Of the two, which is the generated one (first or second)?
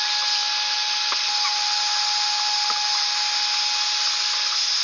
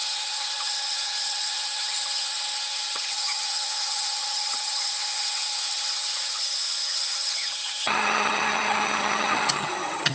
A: second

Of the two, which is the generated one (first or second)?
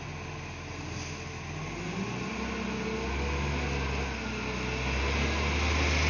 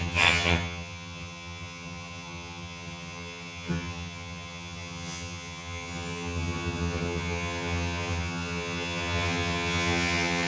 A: second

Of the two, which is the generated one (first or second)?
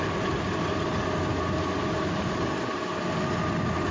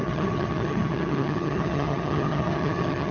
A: second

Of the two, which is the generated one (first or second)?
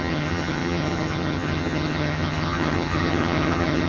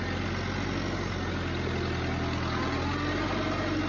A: first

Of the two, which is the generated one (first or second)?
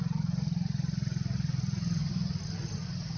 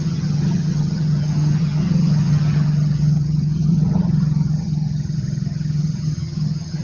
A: second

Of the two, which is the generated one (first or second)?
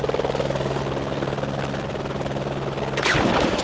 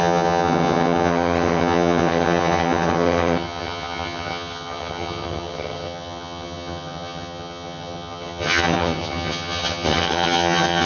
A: second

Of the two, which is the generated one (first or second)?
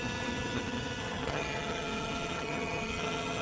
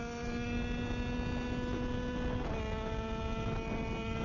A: first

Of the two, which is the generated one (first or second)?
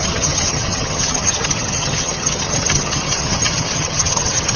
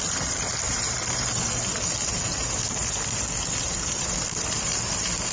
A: first